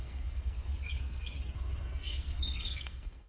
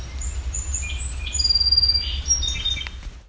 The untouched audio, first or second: second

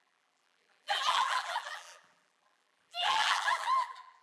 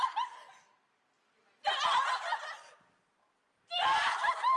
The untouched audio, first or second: second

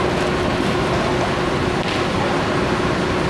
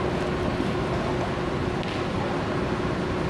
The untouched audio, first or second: second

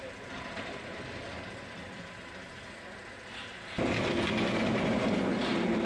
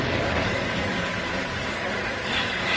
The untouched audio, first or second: first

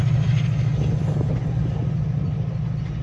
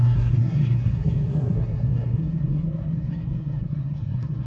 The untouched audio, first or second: first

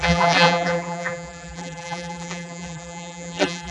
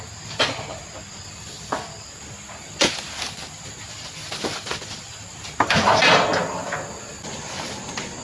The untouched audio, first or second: second